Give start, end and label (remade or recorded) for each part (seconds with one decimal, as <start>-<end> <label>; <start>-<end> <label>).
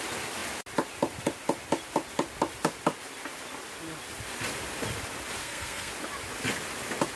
0.0-5.4 recorded; 5.4-5.9 remade; 5.9-7.2 recorded